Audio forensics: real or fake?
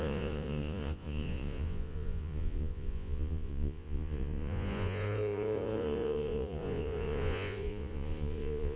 fake